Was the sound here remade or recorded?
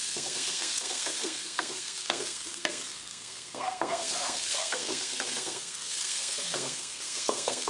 remade